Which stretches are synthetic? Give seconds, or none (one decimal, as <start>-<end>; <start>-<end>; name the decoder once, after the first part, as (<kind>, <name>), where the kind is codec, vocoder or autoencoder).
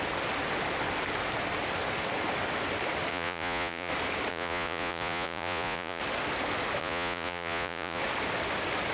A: 3.1-3.9 (vocoder, Vocos); 4.3-6.0; 6.8-8.0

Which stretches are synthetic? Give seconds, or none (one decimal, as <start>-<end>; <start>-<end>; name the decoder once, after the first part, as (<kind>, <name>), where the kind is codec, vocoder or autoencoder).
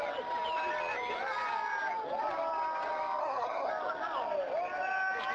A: 3.2-3.7 (codec, SNAC)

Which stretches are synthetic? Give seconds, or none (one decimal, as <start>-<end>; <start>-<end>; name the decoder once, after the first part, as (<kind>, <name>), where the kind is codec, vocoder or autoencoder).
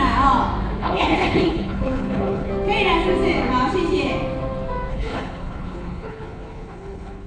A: 0.8-2.5 (codec, HILCodec); 4.9-7.3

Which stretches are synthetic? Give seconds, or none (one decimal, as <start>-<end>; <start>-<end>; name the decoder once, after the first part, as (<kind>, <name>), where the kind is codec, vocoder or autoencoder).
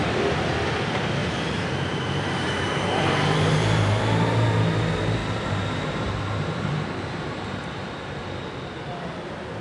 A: 1.2-3.8 (vocoder, BigVGAN v2); 5.2-8.2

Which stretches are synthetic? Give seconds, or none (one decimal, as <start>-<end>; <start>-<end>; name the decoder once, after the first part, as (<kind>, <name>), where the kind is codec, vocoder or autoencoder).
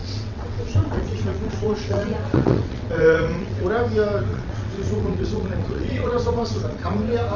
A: 0.0-3.7 (vocoder, WaveNeXt); 4.3-7.0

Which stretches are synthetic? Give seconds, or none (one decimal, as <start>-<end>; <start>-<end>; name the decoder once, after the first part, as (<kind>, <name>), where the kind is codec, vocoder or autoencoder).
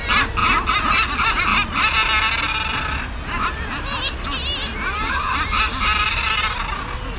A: none